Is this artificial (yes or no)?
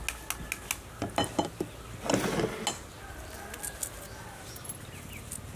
no